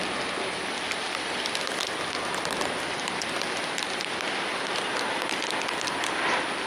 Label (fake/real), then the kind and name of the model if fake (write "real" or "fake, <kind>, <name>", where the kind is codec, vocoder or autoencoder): real